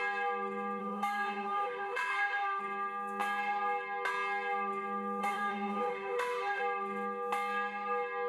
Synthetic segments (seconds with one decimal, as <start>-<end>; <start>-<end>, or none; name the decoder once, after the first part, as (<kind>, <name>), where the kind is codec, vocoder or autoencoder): 0.8-2.6 (autoencoder, DAC-VAE); 5.2-6.6